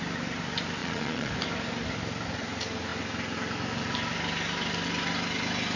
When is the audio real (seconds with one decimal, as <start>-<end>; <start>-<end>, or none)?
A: 0.0-0.8; 1.3-5.8